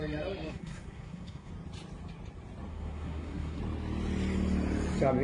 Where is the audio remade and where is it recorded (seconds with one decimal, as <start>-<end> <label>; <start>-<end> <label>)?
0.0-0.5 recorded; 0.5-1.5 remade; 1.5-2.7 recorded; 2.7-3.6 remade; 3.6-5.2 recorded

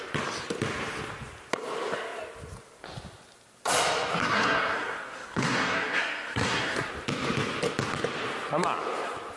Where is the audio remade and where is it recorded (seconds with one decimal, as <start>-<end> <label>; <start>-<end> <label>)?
0.0-4.2 recorded; 4.2-6.9 remade; 6.9-9.4 recorded

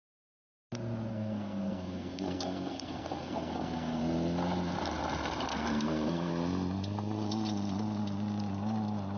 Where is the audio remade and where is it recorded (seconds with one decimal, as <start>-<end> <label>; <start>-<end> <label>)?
0.0-1.1 recorded; 1.1-4.0 remade; 4.0-5.5 recorded; 5.5-6.3 remade; 6.3-9.2 recorded

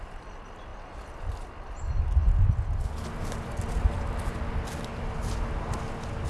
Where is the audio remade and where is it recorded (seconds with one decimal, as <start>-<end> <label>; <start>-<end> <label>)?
0.0-6.3 recorded

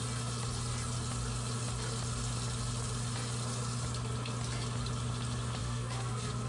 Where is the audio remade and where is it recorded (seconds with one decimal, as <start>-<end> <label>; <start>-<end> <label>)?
0.0-5.6 recorded; 5.6-6.5 remade

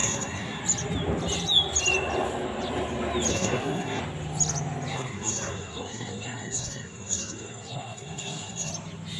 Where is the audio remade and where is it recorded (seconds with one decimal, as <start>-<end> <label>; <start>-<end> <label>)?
0.0-0.6 remade; 0.6-3.3 recorded; 3.3-4.0 remade; 4.0-4.9 recorded; 4.9-8.7 remade; 8.7-9.2 recorded

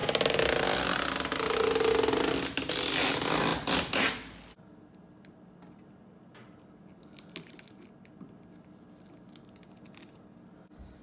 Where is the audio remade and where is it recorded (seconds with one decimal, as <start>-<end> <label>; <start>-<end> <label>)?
0.0-11.0 recorded

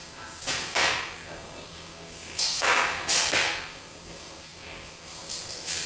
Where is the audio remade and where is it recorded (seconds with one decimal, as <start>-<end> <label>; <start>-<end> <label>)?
0.0-5.9 remade